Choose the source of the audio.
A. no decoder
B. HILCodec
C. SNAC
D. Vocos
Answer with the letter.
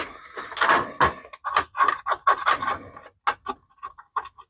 A